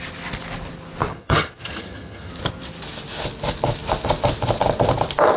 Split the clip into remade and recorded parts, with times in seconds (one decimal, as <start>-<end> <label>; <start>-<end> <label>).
0.0-1.1 recorded; 1.1-2.3 remade; 2.3-5.4 recorded